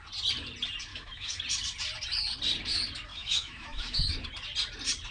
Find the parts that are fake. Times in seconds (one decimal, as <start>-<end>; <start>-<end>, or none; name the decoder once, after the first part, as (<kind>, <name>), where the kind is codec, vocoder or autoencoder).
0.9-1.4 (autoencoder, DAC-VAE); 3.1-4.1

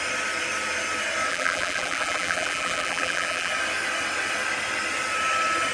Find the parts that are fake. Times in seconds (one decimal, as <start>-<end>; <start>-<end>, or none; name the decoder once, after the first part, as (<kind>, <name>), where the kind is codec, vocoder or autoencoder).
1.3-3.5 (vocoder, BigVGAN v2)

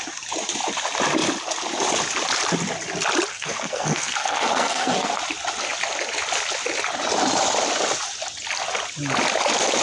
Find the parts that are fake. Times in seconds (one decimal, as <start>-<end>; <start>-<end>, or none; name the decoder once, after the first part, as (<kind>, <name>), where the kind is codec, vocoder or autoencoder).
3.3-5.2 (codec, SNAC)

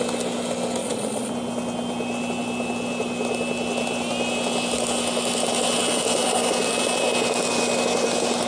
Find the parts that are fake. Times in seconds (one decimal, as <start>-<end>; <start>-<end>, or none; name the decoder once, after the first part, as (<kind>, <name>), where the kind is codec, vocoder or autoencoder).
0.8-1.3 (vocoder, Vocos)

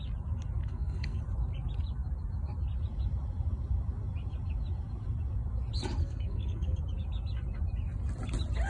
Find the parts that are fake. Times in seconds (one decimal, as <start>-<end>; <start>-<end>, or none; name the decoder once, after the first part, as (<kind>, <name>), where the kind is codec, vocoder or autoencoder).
0.6-1.2 (codec, SNAC); 6.0-6.8